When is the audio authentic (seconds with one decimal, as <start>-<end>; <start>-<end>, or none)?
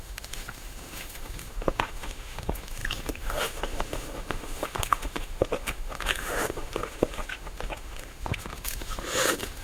none